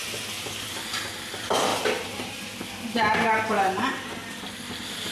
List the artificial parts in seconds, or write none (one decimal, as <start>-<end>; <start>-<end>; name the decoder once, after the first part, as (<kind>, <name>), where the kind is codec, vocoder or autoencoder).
none